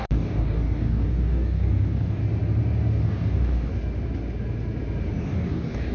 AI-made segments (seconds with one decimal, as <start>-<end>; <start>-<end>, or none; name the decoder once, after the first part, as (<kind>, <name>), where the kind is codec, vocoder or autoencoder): 0.0-2.2 (codec, DAC); 3.0-3.7; 5.2-5.9